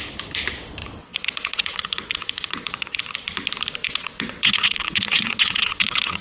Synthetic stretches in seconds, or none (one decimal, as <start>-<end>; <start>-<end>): 0.8-3.0; 3.8-6.2